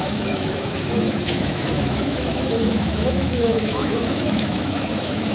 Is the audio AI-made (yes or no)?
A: yes